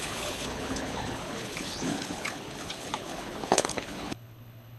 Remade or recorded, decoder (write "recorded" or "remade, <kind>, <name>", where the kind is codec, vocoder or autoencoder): remade, codec, HILCodec